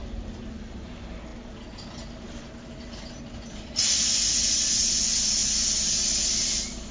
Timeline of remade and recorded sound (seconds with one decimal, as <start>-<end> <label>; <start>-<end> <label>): 0.0-6.9 recorded